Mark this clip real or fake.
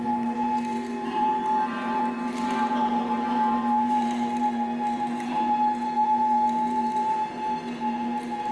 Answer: fake